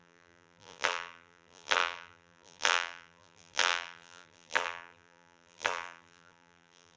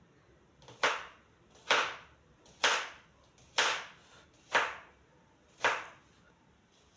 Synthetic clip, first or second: first